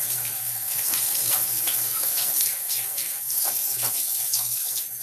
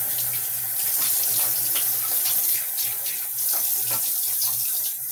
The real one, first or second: second